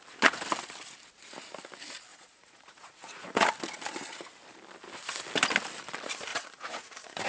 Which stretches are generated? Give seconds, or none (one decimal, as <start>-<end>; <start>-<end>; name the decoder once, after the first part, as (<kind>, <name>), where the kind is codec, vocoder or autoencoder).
2.1-3.5 (vocoder, Vocos); 6.3-7.3